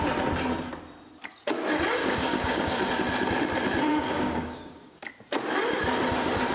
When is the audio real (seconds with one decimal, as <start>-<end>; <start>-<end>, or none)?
0.0-2.0; 2.9-3.9; 5.0-6.5